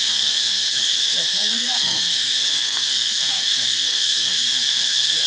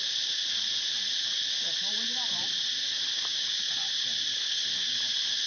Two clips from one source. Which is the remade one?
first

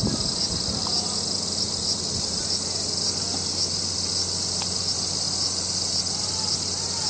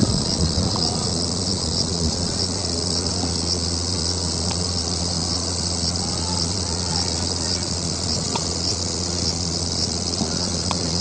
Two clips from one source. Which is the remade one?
second